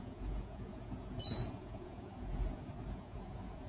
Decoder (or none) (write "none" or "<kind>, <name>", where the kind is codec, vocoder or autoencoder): vocoder, Vocos